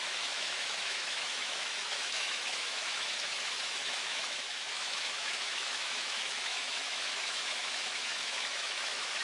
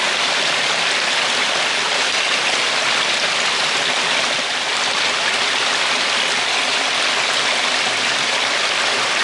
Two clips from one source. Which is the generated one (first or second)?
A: first